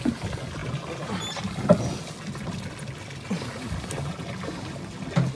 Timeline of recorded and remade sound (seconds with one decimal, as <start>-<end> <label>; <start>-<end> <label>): 0.0-5.3 recorded